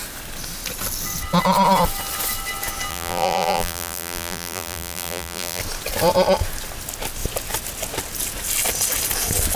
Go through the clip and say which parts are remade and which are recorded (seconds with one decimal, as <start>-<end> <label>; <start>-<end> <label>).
0.0-2.9 recorded; 2.9-5.6 remade; 5.6-9.6 recorded

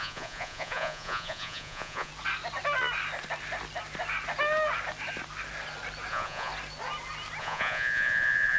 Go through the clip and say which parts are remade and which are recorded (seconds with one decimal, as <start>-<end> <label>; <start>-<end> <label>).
0.0-2.1 remade; 2.1-6.1 recorded; 6.1-6.5 remade; 6.5-7.4 recorded; 7.4-8.6 remade

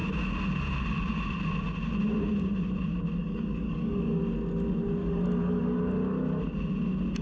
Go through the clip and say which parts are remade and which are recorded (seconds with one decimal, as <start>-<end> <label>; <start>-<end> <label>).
0.0-3.2 recorded; 3.2-4.2 remade; 4.2-5.0 recorded; 5.0-5.8 remade; 5.8-7.2 recorded